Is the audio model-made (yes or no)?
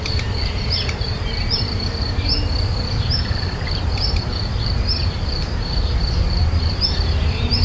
yes